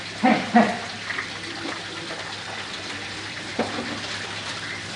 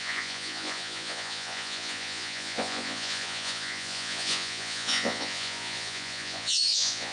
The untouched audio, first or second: first